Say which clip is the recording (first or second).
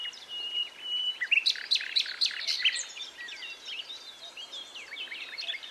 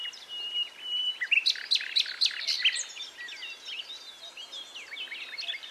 second